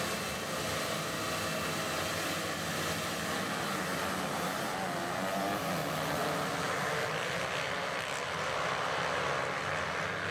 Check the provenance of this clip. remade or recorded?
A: recorded